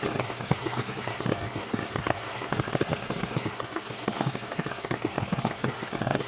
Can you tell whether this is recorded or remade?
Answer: remade